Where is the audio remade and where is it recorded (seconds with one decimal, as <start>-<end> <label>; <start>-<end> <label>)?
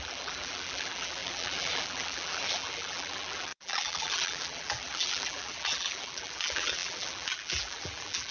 0.0-8.3 remade